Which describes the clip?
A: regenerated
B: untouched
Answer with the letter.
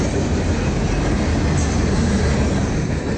B